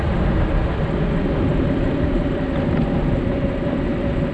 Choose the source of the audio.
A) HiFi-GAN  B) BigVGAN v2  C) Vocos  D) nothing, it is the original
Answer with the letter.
D